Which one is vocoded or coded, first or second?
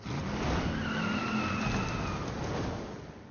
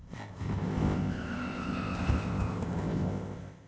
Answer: second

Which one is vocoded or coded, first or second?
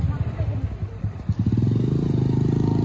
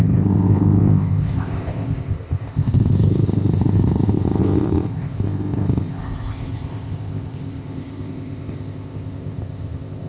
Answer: second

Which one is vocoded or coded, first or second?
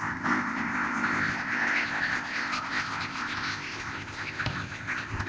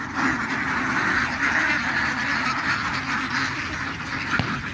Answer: first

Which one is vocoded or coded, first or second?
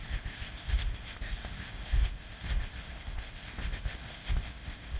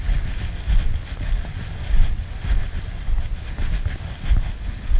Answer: first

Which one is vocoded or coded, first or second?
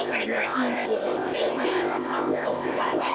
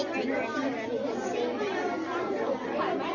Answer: first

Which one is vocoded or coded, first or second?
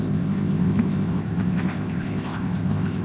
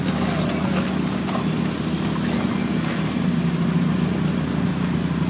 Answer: first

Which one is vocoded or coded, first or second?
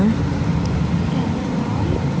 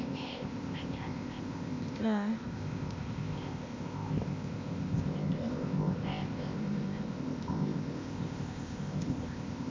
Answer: second